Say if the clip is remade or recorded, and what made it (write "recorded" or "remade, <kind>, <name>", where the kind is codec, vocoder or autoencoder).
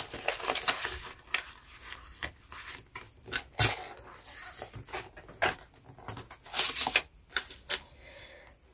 recorded